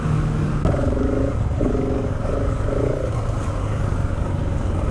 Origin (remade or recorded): remade